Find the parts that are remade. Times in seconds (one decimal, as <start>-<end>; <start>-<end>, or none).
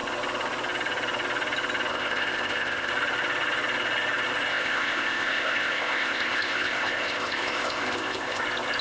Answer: 1.9-2.9; 4.5-8.4